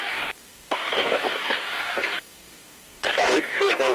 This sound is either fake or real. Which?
fake